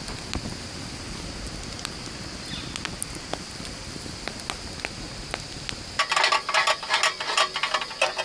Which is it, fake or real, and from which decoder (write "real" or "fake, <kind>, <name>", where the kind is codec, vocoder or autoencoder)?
real